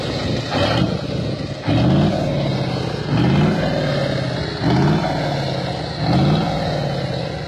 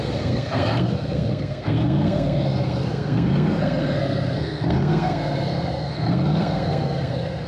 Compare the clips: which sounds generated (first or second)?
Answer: second